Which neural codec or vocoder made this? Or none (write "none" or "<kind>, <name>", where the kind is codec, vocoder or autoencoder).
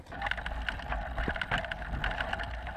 none